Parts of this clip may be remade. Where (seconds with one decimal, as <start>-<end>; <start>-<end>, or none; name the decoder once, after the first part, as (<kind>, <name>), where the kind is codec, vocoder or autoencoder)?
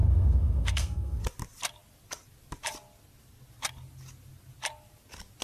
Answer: 0.0-1.2 (codec, SNAC)